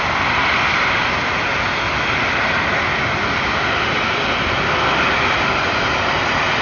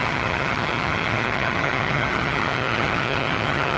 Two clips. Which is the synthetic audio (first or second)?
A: second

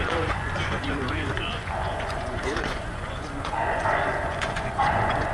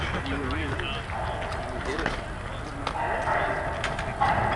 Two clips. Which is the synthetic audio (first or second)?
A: first